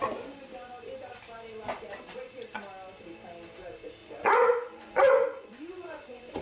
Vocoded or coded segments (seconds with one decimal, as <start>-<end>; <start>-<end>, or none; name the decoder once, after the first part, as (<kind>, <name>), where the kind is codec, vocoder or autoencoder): 4.0-6.4 (vocoder, Vocos)